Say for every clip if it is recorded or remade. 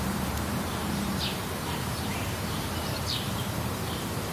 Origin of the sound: remade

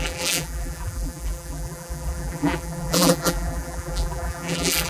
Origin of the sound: remade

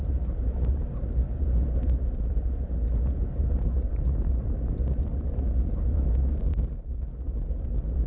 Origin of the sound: recorded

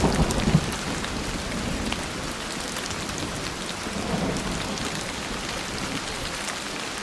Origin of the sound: recorded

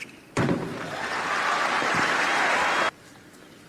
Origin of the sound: recorded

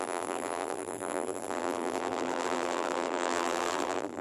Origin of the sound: remade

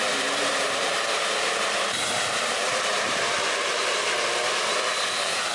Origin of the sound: remade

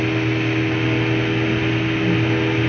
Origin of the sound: recorded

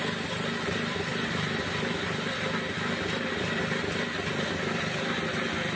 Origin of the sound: remade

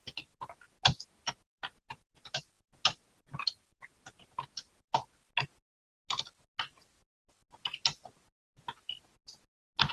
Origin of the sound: recorded